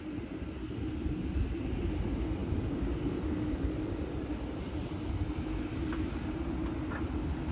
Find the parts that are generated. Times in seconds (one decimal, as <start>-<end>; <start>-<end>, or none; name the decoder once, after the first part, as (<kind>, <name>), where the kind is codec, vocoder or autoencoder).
none